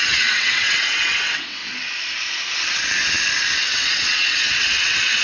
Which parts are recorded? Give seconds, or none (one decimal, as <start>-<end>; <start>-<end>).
1.6-3.6